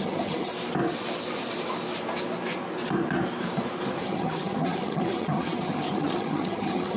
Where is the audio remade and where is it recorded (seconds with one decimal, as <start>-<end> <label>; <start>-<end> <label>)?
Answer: 0.0-0.5 remade; 0.5-4.0 recorded; 4.0-7.0 remade